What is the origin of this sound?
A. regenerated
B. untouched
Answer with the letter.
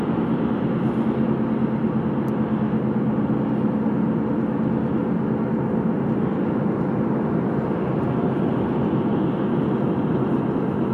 B